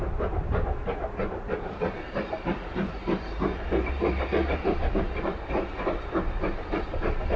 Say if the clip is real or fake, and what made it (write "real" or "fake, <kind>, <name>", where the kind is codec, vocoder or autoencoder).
fake, vocoder, BigVGAN v2